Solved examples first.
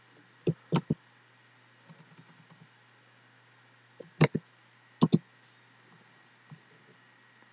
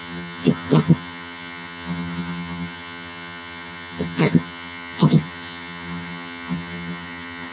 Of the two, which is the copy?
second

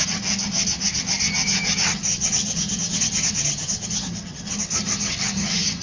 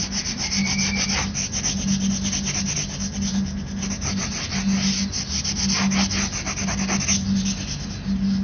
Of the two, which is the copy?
first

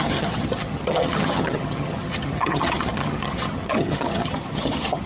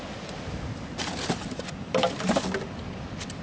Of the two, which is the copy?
first